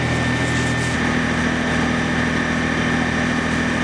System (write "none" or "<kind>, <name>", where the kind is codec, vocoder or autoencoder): none